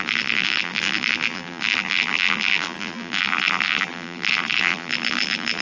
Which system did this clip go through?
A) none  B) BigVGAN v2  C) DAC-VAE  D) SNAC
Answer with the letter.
B